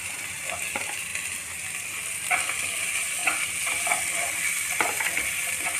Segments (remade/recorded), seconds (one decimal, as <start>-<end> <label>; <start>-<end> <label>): 0.0-5.8 recorded